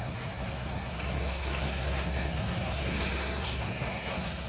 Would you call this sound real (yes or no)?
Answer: no